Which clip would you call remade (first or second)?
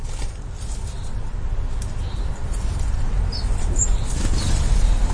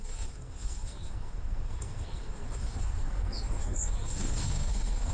second